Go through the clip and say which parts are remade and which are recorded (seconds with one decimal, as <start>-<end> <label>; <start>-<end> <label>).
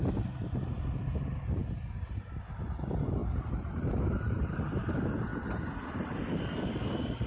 0.0-1.6 recorded; 1.6-2.3 remade; 2.3-3.2 recorded; 3.2-4.6 remade; 4.6-5.3 recorded; 5.3-6.2 remade; 6.2-7.3 recorded